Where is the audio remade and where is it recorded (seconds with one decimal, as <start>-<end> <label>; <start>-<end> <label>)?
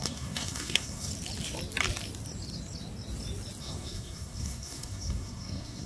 0.0-1.1 remade; 1.1-3.6 recorded; 3.6-5.9 remade